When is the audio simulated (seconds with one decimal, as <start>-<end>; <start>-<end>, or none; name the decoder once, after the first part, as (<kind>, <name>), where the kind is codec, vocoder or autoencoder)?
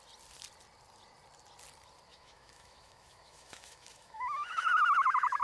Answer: 2.1-5.4 (autoencoder, DAC-VAE)